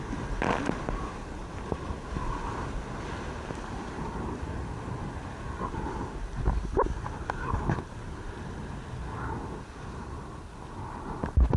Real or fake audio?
real